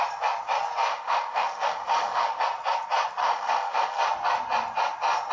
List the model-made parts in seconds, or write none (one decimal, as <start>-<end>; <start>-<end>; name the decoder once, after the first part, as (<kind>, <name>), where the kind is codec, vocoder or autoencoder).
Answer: 0.9-2.4 (autoencoder, DAC-VAE); 3.2-4.0